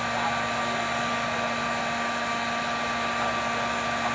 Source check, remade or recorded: recorded